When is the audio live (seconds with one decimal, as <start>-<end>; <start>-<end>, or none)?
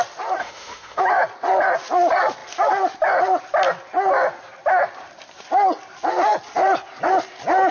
0.0-0.4; 1.0-7.7